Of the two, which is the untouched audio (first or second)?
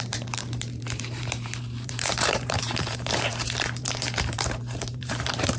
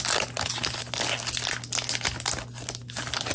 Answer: second